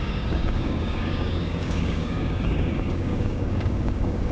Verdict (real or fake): fake